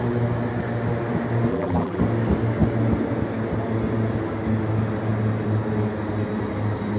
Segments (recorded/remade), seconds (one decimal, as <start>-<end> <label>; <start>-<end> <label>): 0.0-1.5 recorded; 1.5-2.0 remade; 2.0-7.0 recorded